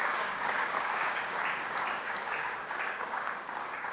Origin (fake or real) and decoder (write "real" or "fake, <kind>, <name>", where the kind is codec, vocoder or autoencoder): fake, codec, DAC